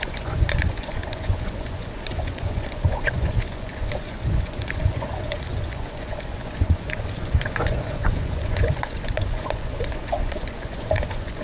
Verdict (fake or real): fake